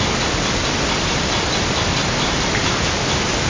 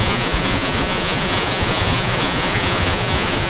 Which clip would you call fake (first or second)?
second